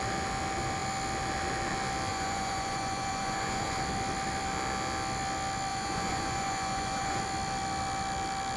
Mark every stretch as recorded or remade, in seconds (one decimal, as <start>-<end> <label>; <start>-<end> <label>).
0.0-2.1 recorded; 2.1-3.8 remade; 3.8-5.7 recorded; 5.7-7.2 remade; 7.2-8.6 recorded